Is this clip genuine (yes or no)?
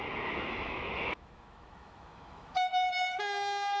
no